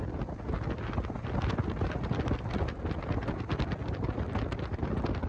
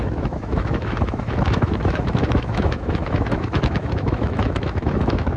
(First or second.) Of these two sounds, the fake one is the second